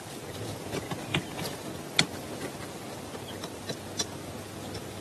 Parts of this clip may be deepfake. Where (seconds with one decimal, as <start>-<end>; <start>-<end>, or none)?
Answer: none